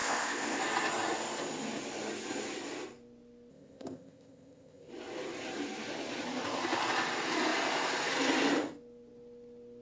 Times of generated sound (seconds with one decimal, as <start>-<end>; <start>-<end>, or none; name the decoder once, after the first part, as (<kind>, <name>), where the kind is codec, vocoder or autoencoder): 0.0-0.6 (codec, ZipCodec); 3.5-4.9